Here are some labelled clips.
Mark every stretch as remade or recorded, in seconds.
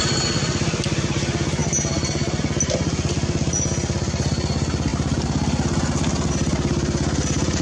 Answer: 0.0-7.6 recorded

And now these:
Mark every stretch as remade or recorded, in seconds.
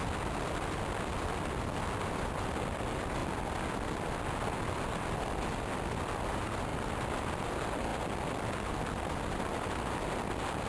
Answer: 0.0-10.7 recorded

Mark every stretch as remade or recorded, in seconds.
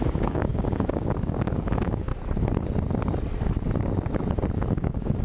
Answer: 0.0-2.1 remade; 2.1-4.8 recorded; 4.8-5.2 remade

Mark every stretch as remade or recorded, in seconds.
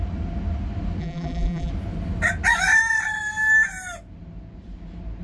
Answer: 0.0-1.0 recorded; 1.0-1.7 remade; 1.7-5.2 recorded